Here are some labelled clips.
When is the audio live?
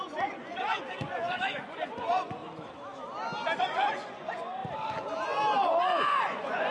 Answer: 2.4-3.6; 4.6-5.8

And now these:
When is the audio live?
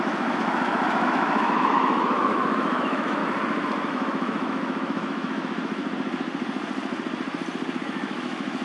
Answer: 3.2-3.9; 5.8-7.8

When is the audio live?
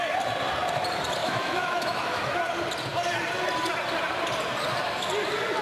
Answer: 0.0-1.2; 2.2-5.6